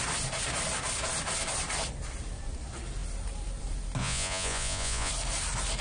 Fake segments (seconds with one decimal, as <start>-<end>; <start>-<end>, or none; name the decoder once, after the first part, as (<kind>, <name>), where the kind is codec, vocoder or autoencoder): 4.0-5.1 (vocoder, Vocos)